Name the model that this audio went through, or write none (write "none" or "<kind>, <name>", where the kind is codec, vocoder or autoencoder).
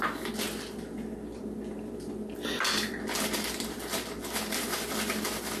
none